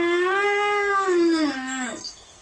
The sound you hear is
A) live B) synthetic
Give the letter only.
B